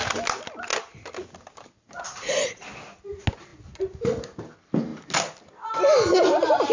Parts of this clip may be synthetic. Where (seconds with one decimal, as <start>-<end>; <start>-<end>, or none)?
none